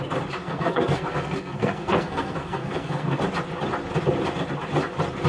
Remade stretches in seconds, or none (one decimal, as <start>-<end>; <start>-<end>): 0.4-3.2